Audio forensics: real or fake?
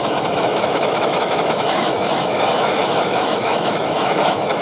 fake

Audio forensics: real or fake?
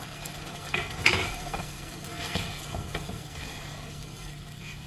fake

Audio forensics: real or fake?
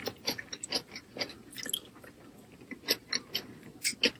real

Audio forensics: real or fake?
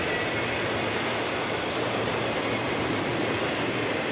real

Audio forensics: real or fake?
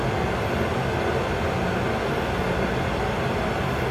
real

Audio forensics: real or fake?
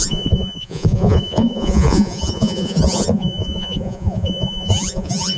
fake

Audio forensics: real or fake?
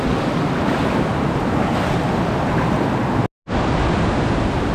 real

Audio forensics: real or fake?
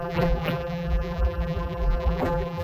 fake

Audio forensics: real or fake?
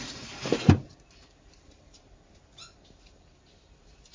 real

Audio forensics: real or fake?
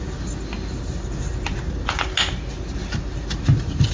real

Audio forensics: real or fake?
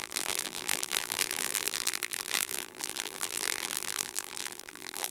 fake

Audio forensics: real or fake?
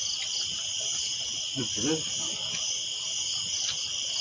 real